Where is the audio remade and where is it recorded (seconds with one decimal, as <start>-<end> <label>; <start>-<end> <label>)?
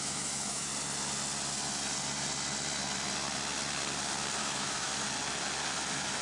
0.0-0.7 remade; 0.7-4.4 recorded; 4.4-4.9 remade; 4.9-6.2 recorded